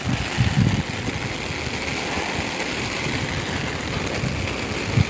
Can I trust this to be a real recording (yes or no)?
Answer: yes